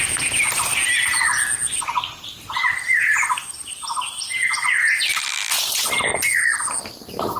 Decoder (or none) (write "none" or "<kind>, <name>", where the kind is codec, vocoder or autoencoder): none